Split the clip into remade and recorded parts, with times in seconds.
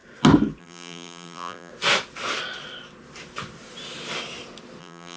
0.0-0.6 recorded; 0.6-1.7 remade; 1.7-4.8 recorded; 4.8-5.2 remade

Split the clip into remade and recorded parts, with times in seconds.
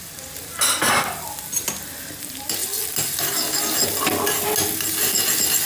0.0-5.7 recorded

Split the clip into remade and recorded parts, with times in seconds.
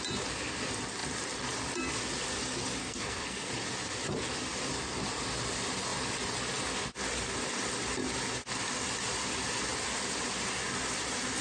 0.0-2.8 recorded; 2.8-3.5 remade; 3.5-11.4 recorded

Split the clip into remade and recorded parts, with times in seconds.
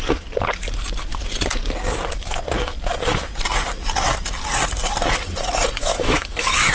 0.0-5.8 recorded; 5.8-6.7 remade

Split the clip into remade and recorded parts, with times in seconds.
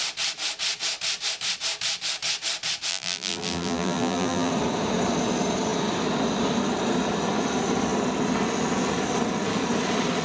0.0-2.9 recorded; 2.9-4.5 remade; 4.5-10.2 recorded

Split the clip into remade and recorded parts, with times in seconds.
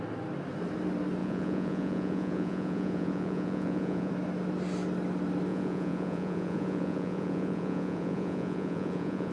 0.0-1.2 recorded; 1.2-4.1 remade; 4.1-5.5 recorded; 5.5-9.3 remade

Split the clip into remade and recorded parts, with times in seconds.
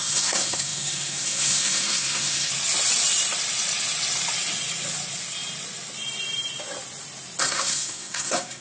0.0-2.5 remade; 2.5-7.4 recorded; 7.4-8.6 remade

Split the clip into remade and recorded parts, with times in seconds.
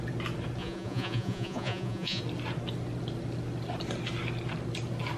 0.0-0.6 recorded; 0.6-2.2 remade; 2.2-5.2 recorded